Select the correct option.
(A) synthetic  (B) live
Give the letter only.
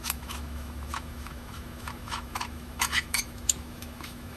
A